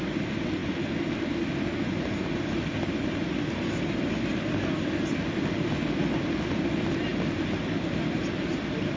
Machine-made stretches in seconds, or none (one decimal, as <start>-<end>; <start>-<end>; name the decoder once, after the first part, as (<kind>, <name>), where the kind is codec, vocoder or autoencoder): none